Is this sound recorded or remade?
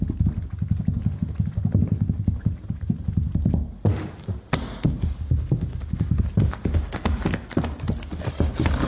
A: recorded